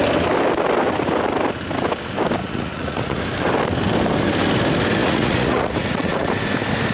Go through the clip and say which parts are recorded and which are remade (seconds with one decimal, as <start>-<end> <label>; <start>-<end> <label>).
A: 0.0-2.4 recorded; 2.4-3.2 remade; 3.2-5.0 recorded; 5.0-6.3 remade; 6.3-6.9 recorded